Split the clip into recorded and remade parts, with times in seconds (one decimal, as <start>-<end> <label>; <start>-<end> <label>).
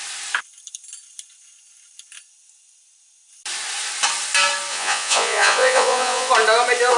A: 0.0-4.7 recorded; 4.7-6.3 remade; 6.3-7.0 recorded